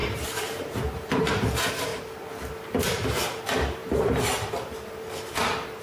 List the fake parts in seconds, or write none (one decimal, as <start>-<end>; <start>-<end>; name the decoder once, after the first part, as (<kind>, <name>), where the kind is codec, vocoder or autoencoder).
0.0-1.5 (vocoder, BigVGAN v2); 3.8-4.3